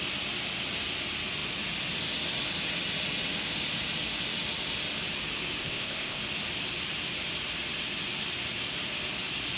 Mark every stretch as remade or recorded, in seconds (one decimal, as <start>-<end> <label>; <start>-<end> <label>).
0.0-5.6 recorded; 5.6-6.2 remade; 6.2-9.6 recorded